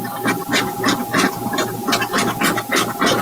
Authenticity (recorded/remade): recorded